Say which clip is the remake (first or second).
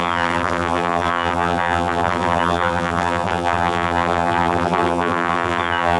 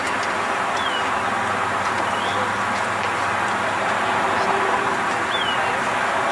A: first